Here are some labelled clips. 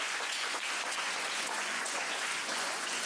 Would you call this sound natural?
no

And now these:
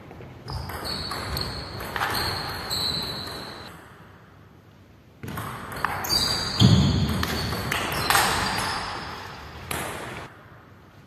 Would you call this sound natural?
yes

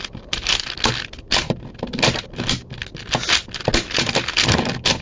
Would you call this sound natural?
yes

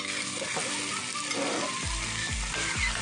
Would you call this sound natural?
yes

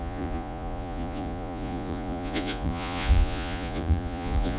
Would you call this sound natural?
no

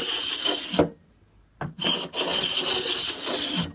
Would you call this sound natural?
yes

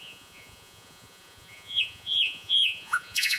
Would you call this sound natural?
no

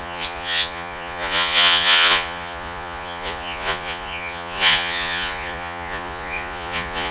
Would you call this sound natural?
no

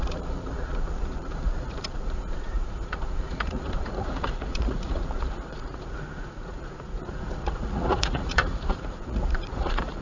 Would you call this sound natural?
no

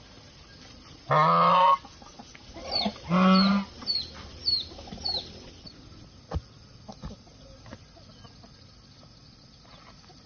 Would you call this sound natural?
yes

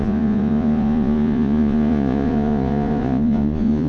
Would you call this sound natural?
no